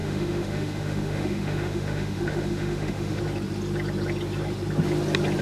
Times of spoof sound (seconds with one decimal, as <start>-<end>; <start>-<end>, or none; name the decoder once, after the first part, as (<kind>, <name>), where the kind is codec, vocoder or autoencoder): 0.0-3.2 (autoencoder, DAC-VAE)